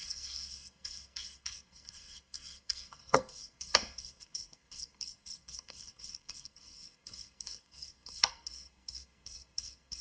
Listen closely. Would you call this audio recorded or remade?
remade